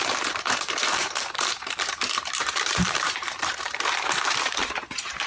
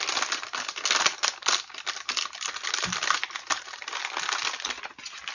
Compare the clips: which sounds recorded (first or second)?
second